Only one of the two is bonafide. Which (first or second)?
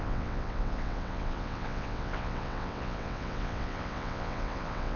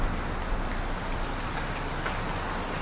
second